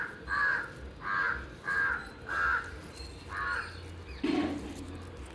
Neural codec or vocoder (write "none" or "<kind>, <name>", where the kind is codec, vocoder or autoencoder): none